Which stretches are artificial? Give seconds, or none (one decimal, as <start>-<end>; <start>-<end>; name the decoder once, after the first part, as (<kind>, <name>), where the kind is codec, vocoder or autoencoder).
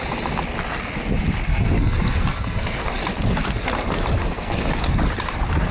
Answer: 1.5-3.0 (codec, SNAC); 4.2-4.8